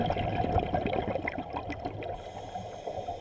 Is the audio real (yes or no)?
yes